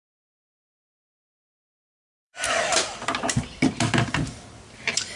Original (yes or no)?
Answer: no